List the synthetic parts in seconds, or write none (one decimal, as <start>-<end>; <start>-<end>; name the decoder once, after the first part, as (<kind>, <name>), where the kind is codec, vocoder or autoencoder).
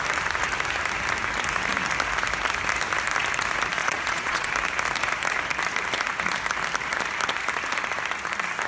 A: 3.8-4.5 (vocoder, Vocos)